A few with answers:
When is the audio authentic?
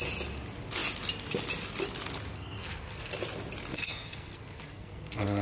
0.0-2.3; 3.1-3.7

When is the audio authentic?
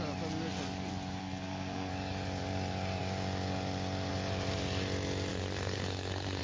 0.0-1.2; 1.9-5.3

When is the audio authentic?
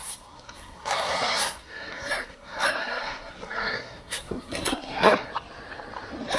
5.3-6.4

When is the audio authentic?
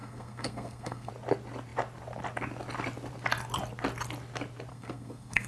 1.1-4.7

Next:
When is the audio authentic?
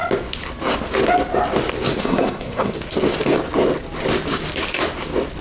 0.0-2.0; 2.7-5.4